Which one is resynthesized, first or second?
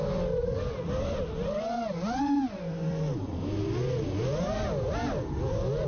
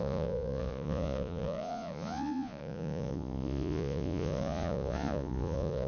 second